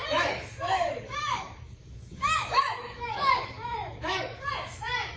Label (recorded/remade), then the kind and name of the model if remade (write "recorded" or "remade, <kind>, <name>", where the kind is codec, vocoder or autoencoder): remade, autoencoder, DAC-VAE